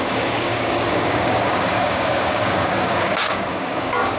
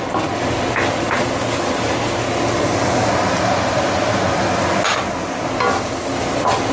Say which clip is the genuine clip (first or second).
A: second